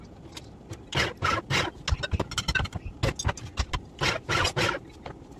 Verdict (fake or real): real